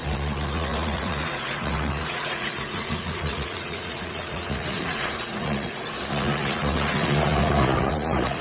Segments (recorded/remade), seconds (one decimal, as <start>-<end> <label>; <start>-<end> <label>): 0.0-8.4 remade